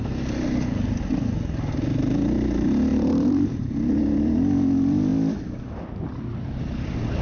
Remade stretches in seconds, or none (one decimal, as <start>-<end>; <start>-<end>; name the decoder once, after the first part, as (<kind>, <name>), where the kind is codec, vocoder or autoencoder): 2.9-3.9 (vocoder, BigVGAN v2)